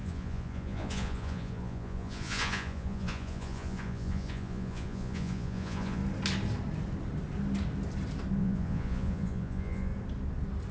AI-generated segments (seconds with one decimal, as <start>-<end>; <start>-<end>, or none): 0.0-6.0; 8.4-9.9